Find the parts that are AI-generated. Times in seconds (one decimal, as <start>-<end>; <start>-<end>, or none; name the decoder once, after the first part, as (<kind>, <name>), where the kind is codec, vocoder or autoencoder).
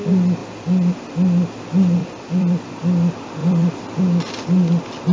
0.4-1.1 (vocoder, BigVGAN v2); 2.0-2.8; 3.4-4.0